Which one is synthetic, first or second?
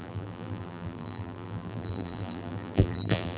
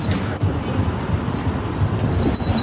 first